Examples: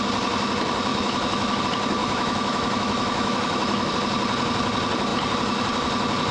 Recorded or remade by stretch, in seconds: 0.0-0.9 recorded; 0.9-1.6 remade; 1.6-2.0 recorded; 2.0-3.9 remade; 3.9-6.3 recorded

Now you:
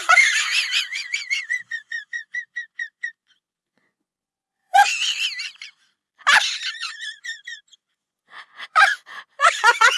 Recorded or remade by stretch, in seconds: 0.0-4.8 remade; 4.8-6.7 recorded; 6.7-10.0 remade

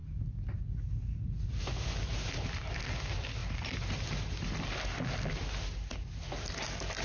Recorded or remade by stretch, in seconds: 0.0-7.0 recorded

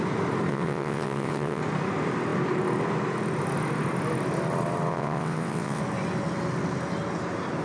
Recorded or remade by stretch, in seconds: 0.0-0.5 recorded; 0.5-1.6 remade; 1.6-4.9 recorded; 4.9-5.8 remade; 5.8-7.6 recorded

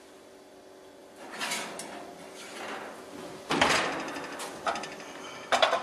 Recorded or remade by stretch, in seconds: 0.0-5.8 recorded